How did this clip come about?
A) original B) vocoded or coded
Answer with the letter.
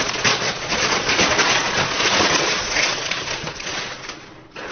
B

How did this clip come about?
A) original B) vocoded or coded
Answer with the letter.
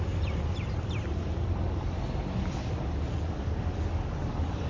A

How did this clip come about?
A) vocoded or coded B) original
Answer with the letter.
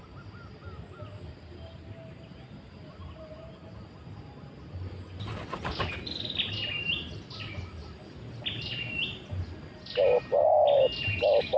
B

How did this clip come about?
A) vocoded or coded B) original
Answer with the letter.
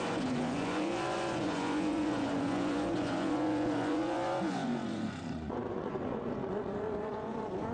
A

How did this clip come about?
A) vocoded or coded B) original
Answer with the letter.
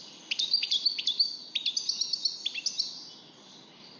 B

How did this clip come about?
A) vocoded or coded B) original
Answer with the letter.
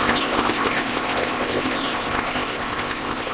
A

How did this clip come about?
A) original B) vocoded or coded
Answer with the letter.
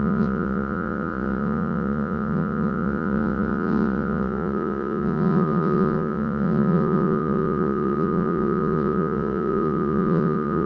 B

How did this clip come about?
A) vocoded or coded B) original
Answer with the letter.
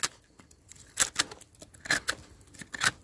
B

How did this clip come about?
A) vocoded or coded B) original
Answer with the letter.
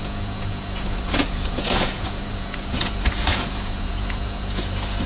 A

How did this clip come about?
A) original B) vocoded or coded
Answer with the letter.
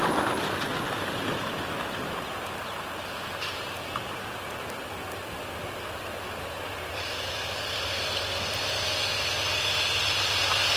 A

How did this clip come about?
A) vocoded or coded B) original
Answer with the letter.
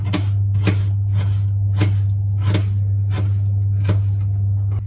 B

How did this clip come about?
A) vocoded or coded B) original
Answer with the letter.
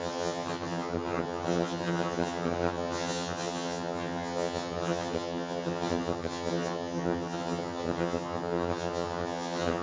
A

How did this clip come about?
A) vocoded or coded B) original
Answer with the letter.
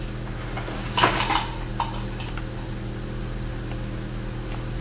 B